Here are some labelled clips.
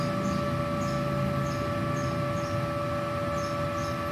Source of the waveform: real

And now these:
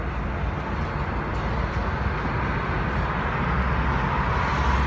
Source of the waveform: real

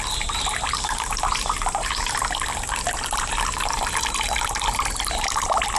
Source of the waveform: real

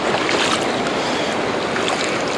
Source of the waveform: real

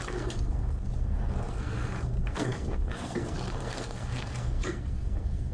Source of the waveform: fake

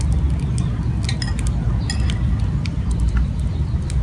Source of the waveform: real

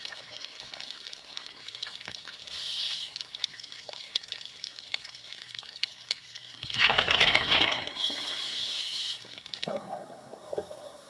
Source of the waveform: fake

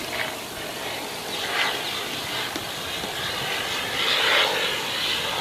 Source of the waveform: real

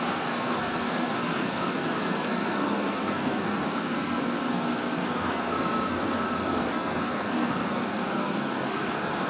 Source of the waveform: fake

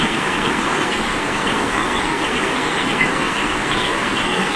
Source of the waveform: fake